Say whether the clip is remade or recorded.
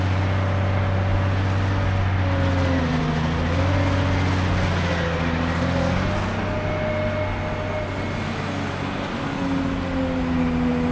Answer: recorded